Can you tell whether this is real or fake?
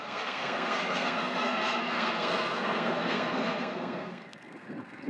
fake